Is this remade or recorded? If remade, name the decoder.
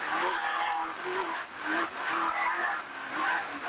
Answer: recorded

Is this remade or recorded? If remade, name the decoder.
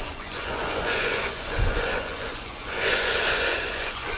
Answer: remade, vocoder, Vocos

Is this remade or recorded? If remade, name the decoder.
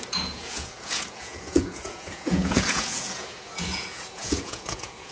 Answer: remade, vocoder, Vocos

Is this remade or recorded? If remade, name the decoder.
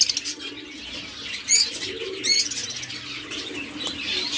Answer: recorded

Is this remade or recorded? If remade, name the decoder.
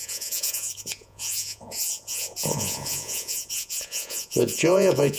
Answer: remade, vocoder, Vocos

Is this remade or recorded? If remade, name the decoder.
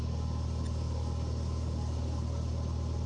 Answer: recorded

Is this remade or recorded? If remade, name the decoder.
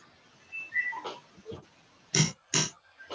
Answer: recorded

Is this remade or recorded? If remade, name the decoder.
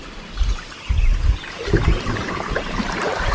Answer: recorded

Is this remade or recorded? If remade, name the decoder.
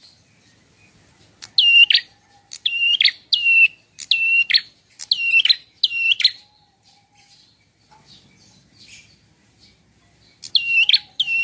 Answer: recorded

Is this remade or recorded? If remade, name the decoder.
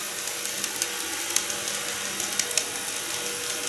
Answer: recorded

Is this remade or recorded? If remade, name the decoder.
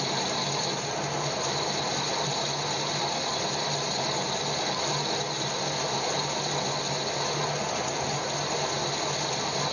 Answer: recorded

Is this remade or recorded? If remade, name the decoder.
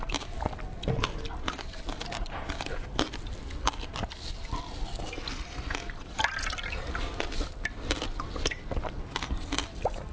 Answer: recorded